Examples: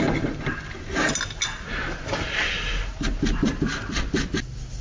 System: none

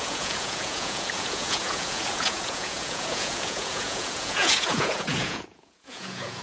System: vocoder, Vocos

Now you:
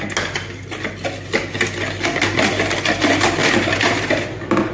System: none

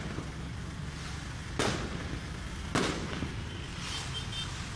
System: none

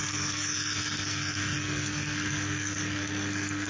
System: codec, SNAC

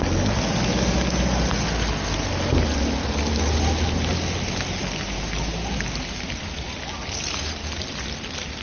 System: none